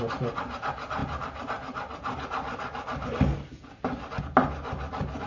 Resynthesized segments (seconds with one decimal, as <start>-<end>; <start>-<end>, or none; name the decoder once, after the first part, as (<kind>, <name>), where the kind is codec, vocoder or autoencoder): none